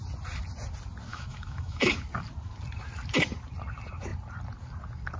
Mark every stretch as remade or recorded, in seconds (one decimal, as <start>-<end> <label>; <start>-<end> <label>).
0.0-1.1 recorded; 1.1-2.0 remade; 2.0-5.2 recorded